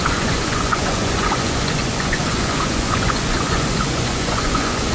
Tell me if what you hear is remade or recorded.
remade